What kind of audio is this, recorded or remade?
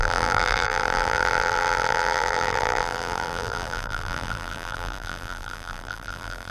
remade